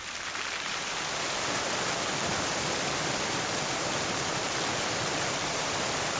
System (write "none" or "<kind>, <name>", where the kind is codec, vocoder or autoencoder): none